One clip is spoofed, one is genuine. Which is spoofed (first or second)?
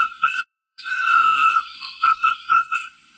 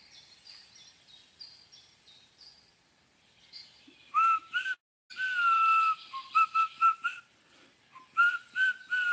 first